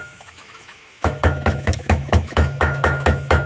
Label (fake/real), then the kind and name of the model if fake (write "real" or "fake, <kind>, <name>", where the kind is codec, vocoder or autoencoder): fake, autoencoder, DAC-VAE